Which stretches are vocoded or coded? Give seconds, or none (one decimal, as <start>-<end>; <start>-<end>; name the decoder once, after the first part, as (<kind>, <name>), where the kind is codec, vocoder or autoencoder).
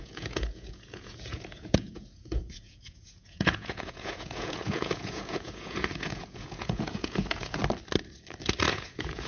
0.0-7.6 (vocoder, Vocos); 8.7-9.3